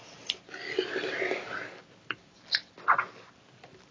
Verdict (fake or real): real